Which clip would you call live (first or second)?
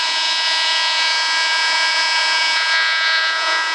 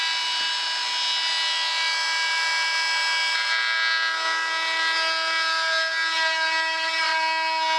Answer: second